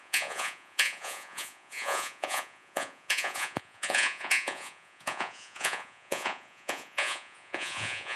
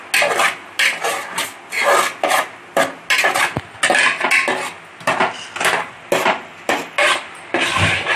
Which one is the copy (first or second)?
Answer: first